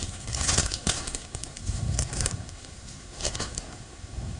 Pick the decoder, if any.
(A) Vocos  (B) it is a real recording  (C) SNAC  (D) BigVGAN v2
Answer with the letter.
C